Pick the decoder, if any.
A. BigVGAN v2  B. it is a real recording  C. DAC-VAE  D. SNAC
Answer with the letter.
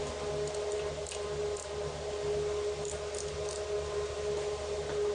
B